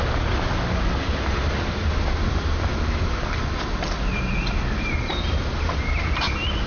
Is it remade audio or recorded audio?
recorded